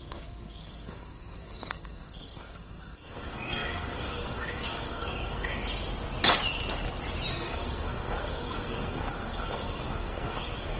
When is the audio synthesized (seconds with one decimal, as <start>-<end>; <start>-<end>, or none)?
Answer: 0.0-5.6; 7.3-10.8